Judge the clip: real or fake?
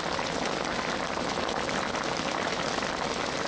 real